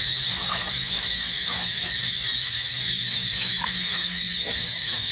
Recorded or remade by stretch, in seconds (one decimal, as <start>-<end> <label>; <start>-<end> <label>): 0.0-5.1 remade